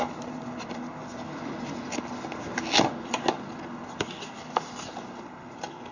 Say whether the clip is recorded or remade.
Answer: recorded